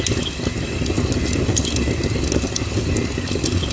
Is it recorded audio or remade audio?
recorded